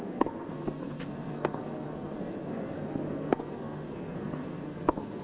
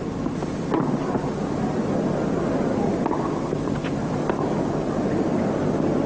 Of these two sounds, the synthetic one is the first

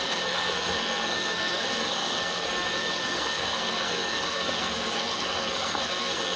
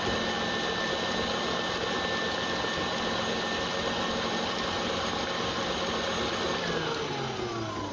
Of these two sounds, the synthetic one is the first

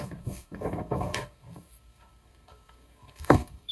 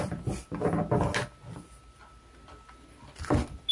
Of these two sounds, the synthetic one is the first